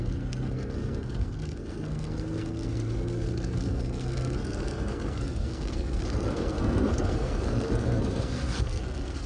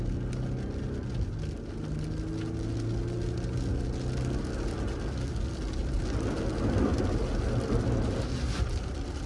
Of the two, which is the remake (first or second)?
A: first